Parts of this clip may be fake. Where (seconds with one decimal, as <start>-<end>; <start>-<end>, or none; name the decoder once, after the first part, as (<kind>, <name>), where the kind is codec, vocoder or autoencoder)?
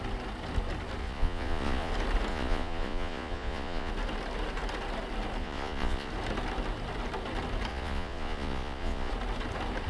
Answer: 1.0-1.9 (vocoder, Vocos); 2.3-3.9; 5.4-6.1; 7.7-9.1